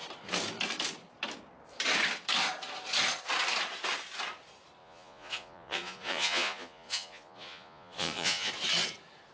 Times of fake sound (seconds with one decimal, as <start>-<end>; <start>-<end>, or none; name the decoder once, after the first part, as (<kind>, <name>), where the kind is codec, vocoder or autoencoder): 4.8-8.5 (vocoder, Vocos)